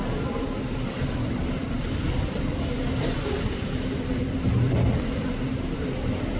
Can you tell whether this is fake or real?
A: fake